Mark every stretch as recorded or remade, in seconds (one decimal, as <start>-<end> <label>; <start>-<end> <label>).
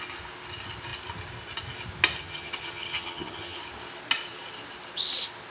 0.0-2.2 recorded; 2.2-3.6 remade; 3.6-5.5 recorded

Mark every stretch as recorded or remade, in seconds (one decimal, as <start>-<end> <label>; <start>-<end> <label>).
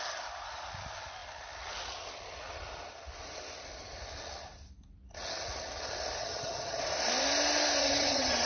0.0-6.2 recorded; 6.2-6.8 remade; 6.8-7.8 recorded; 7.8-8.5 remade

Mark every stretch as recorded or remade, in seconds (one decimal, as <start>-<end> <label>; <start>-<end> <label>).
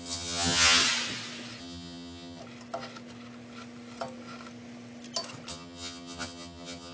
0.0-0.8 remade; 0.8-1.6 recorded; 1.6-2.4 remade; 2.4-5.5 recorded; 5.5-6.9 remade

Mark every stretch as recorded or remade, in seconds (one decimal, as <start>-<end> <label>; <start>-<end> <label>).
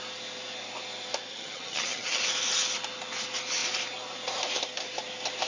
0.0-1.3 recorded; 1.3-2.2 remade; 2.2-5.5 recorded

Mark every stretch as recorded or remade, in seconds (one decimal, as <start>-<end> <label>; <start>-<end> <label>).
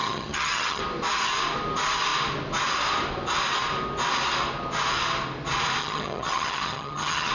0.0-0.8 remade; 0.8-5.8 recorded; 5.8-7.3 remade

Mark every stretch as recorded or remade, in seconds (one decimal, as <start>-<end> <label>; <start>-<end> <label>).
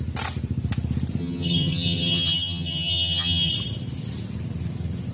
0.0-1.2 recorded; 1.2-3.5 remade; 3.5-5.1 recorded